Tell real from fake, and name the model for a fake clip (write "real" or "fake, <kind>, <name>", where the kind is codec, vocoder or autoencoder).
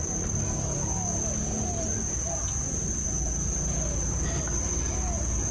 real